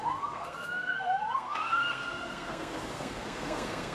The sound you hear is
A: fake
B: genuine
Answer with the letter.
A